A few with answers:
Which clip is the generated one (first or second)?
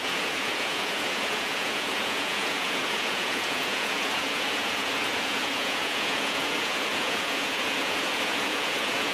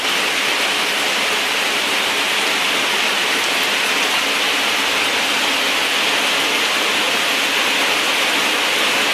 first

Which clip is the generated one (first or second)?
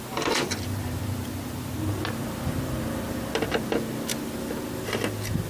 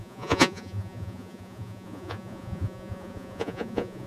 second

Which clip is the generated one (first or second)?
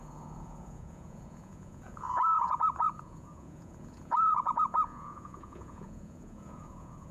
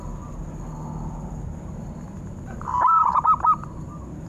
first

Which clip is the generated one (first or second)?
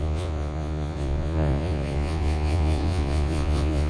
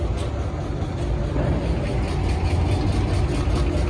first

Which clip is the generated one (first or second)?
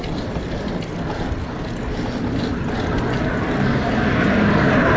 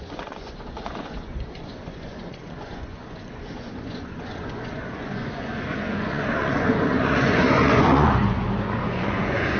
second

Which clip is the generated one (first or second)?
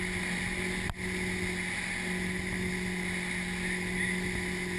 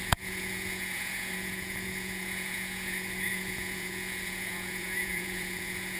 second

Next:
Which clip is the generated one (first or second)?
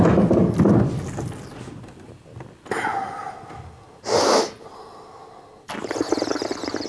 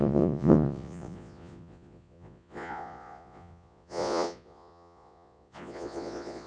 second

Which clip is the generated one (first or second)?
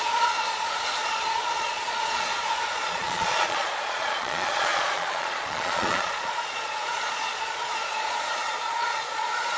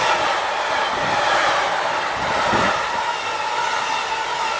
first